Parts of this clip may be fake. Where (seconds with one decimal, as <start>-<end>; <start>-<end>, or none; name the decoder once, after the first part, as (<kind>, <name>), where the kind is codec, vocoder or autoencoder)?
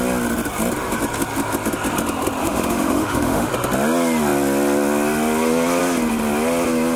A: 2.4-3.5 (autoencoder, DAC-VAE)